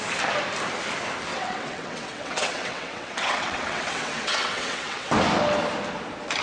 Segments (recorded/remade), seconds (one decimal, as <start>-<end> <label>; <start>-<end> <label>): 0.0-1.3 recorded; 1.3-5.1 remade; 5.1-6.4 recorded